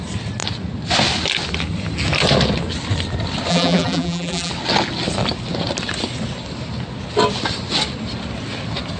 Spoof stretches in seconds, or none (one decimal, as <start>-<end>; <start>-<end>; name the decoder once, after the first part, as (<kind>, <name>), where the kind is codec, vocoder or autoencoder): 3.5-4.5 (vocoder, BigVGAN v2)